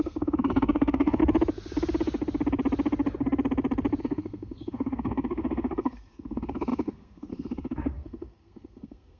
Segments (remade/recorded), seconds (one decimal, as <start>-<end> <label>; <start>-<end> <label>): 0.0-1.2 remade; 1.2-4.0 recorded; 4.0-9.2 remade